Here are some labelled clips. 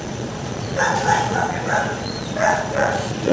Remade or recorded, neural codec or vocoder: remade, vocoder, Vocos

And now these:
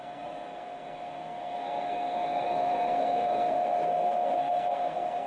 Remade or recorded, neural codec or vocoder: remade, codec, SNAC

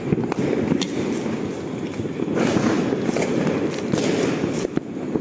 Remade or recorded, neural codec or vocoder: recorded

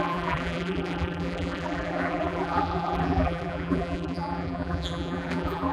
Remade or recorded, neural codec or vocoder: remade, vocoder, BigVGAN v2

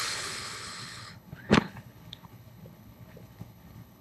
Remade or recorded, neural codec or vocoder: remade, codec, HILCodec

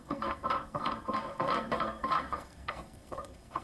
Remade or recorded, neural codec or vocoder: remade, codec, SNAC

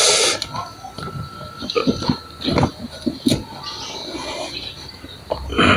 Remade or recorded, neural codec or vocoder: recorded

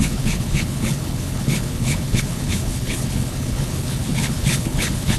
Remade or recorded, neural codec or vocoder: remade, codec, HILCodec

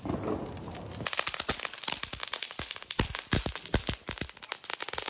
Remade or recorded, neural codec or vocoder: recorded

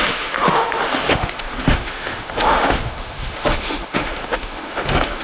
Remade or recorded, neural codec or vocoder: remade, autoencoder, DAC-VAE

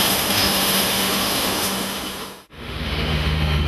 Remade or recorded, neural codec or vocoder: remade, autoencoder, DAC-VAE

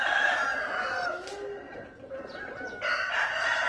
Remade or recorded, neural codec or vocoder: recorded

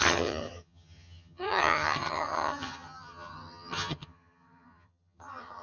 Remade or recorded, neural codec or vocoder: remade, vocoder, HiFi-GAN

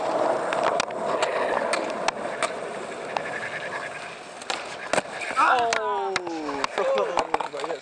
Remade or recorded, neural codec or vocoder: recorded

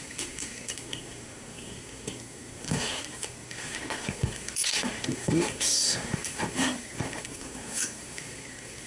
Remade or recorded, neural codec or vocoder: remade, codec, SNAC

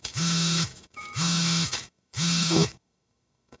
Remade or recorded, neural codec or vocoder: remade, autoencoder, DAC-VAE